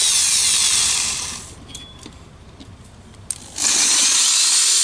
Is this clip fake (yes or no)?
no